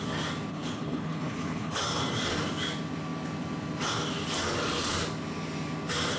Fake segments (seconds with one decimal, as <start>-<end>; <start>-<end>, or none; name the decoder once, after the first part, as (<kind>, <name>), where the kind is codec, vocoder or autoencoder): 0.5-1.8 (codec, HILCodec)